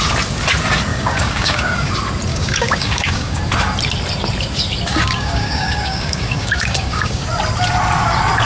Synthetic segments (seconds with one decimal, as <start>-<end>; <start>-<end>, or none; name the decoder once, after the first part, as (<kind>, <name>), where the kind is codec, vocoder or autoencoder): 0.9-1.9 (codec, DAC); 2.3-3.4; 4.9-7.3